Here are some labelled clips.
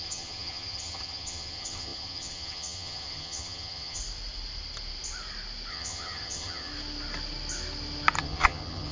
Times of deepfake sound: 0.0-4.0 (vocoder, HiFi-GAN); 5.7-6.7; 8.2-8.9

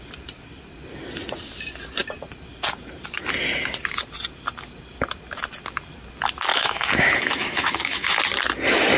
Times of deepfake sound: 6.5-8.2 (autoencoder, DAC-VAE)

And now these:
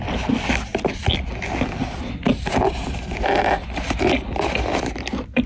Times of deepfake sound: none

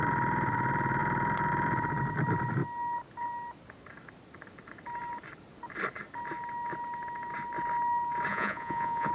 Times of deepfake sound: 8.3-9.1 (vocoder, Vocos)

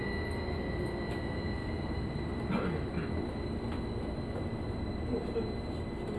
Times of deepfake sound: 1.6-2.9 (vocoder, BigVGAN v2)